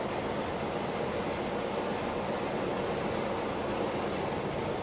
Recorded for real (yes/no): yes